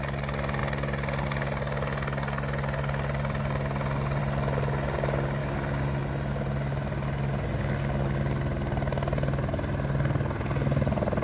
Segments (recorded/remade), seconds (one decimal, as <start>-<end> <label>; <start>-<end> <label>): 0.0-11.2 recorded